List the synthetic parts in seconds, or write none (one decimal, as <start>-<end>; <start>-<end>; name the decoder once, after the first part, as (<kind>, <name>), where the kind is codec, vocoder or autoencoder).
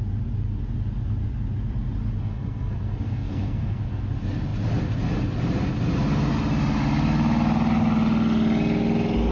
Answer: 2.2-3.8 (codec, SNAC)